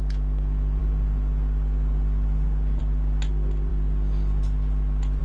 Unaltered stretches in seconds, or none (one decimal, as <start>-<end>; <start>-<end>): 0.0-5.2